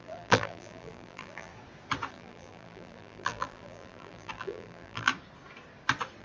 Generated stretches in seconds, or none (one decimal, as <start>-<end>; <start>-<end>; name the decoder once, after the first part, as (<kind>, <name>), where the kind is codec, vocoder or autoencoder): 0.0-1.5 (vocoder, BigVGAN v2); 2.1-5.1